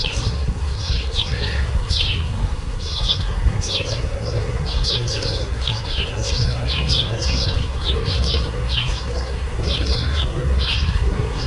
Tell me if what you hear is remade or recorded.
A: remade